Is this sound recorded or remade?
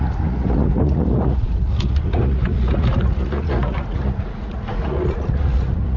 remade